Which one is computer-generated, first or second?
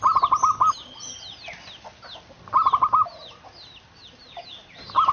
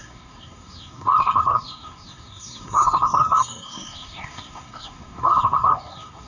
second